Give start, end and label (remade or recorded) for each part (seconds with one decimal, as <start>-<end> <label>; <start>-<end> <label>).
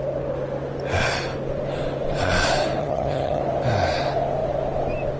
0.0-2.8 recorded; 2.8-3.4 remade; 3.4-5.2 recorded